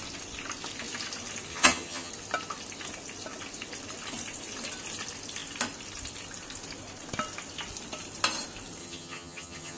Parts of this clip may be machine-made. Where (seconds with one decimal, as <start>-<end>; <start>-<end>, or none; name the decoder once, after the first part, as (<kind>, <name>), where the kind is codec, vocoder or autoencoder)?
1.5-2.1 (vocoder, HiFi-GAN); 8.8-9.8

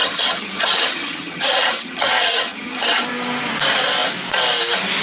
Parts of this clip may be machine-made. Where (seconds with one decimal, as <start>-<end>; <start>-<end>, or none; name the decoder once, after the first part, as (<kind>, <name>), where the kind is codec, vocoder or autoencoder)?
0.0-3.0 (vocoder, HiFi-GAN)

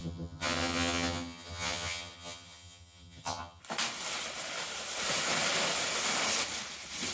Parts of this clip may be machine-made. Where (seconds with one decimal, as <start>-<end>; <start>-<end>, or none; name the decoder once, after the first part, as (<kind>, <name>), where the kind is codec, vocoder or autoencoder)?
0.0-3.6 (vocoder, HiFi-GAN)

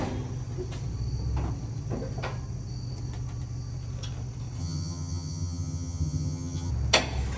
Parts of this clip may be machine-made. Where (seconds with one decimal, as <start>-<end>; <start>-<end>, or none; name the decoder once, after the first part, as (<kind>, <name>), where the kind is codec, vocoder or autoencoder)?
4.6-6.7 (vocoder, HiFi-GAN)

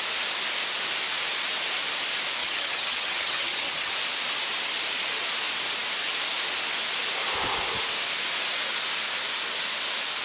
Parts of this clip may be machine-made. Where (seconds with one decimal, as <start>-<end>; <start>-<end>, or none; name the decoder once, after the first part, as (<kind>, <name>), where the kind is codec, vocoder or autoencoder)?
2.4-3.9 (vocoder, HiFi-GAN)

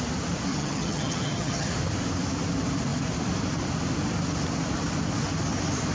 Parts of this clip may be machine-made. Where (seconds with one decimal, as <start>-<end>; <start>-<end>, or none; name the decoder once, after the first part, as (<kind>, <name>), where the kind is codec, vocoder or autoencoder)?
0.5-1.7 (vocoder, HiFi-GAN)